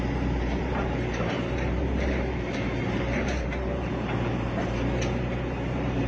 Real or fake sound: fake